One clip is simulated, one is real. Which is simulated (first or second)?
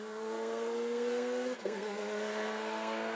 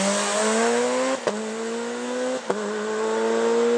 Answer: first